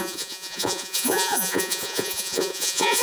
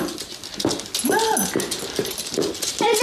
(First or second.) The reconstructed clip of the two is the first